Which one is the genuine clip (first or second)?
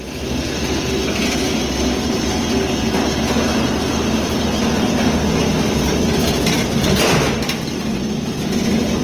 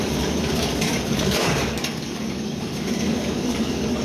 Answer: first